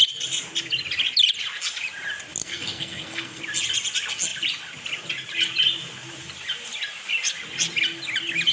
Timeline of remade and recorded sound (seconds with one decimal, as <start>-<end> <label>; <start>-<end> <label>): 0.0-2.4 recorded; 2.4-3.4 remade; 3.4-8.5 recorded